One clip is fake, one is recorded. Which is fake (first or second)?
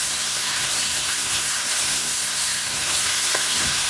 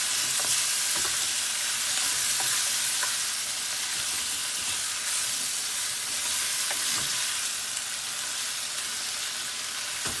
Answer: first